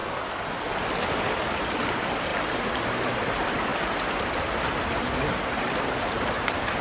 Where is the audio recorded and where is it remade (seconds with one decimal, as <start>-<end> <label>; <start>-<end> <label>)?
0.0-1.9 recorded; 1.9-3.7 remade; 3.7-4.2 recorded; 4.2-6.8 remade